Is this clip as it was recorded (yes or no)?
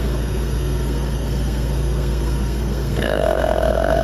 no